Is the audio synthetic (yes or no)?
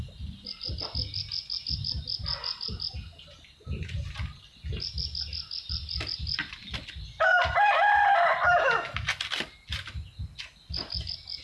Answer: no